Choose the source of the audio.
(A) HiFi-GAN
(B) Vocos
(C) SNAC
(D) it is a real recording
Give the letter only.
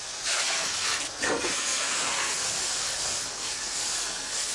C